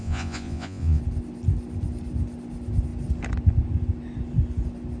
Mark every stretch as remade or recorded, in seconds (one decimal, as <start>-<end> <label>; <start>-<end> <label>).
0.0-1.0 remade; 1.0-5.0 recorded